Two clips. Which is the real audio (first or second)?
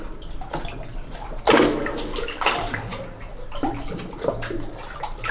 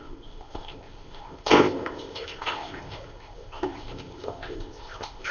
first